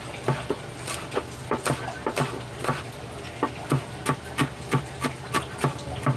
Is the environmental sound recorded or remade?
recorded